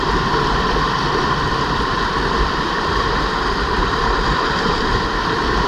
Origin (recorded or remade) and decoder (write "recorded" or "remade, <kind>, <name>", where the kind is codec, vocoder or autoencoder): remade, vocoder, BigVGAN v2